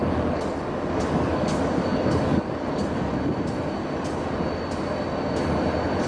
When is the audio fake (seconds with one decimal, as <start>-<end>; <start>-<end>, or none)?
0.0-3.1